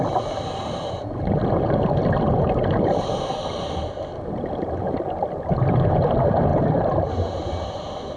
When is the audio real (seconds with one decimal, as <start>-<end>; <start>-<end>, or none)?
0.0-8.2